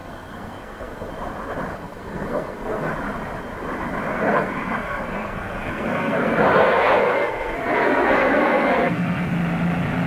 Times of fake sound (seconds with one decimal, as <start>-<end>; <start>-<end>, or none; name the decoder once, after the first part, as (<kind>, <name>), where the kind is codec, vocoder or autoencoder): 0.0-1.1 (codec, SNAC); 1.7-2.9; 4.1-9.3